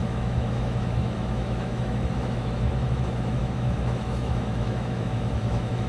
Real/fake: fake